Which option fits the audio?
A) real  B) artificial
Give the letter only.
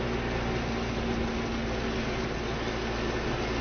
A